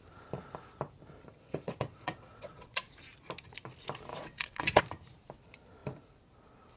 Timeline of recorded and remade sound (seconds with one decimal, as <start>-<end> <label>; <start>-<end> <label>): 0.0-1.3 recorded; 1.3-2.8 remade; 2.8-4.1 recorded; 4.1-4.8 remade; 4.8-6.8 recorded